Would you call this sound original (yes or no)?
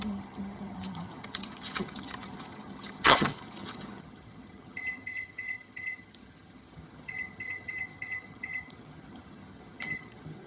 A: no